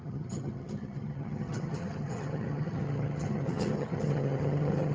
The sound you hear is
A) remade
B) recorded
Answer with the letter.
A